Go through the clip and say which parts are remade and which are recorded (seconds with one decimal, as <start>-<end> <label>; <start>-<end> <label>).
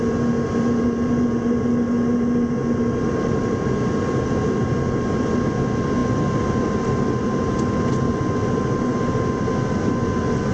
0.0-10.5 recorded